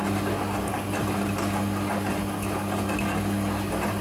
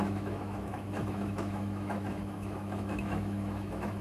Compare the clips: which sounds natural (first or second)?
first